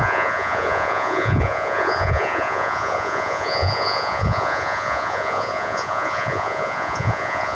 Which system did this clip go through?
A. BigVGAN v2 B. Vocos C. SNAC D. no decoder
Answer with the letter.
B